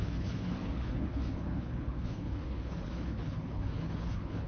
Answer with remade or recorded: remade